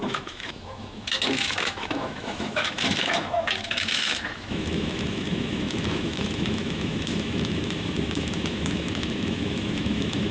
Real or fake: fake